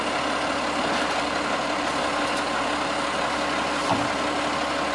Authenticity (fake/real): real